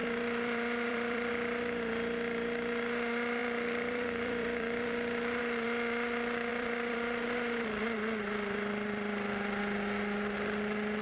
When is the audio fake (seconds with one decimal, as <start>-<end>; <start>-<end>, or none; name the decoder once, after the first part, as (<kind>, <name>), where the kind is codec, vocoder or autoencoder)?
0.0-1.3 (vocoder, BigVGAN v2); 3.4-5.4; 6.5-9.6